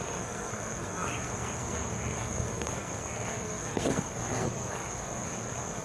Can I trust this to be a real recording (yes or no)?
no